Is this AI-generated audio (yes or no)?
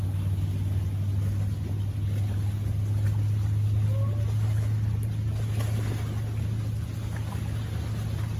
no